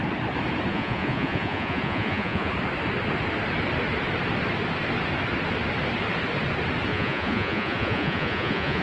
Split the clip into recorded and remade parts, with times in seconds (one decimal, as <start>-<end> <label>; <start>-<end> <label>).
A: 0.0-0.7 recorded; 0.7-2.5 remade; 2.5-6.9 recorded; 6.9-8.8 remade